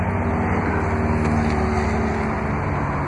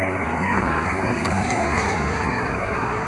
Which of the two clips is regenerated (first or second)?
second